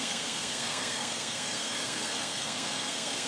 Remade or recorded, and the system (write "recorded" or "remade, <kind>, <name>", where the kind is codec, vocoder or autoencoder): remade, codec, SNAC